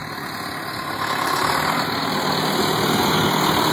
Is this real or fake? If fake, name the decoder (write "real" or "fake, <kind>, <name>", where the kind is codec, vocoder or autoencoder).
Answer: real